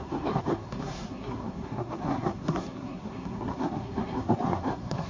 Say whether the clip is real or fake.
fake